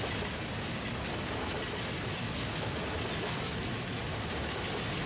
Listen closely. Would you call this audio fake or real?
real